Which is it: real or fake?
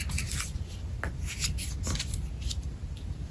real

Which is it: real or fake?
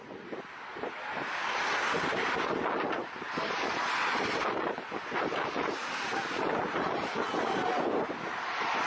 real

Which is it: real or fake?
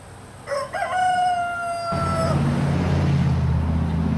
real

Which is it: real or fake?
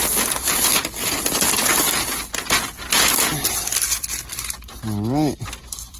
real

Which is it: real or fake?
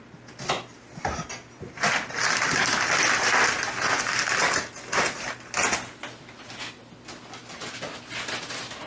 real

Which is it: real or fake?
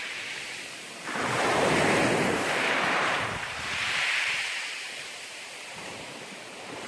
fake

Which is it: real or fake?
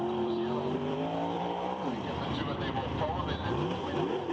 fake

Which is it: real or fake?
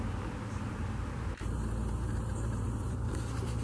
fake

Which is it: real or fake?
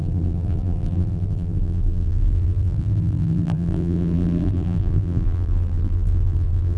fake